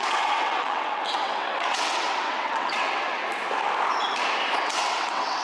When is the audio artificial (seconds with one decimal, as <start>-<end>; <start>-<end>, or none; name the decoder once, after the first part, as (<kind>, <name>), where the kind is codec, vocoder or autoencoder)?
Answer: 0.0-3.2 (vocoder, WaveNeXt); 4.6-5.4